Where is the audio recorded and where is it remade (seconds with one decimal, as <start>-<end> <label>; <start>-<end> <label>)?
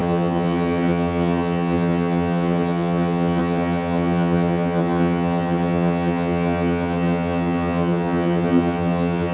0.0-9.3 remade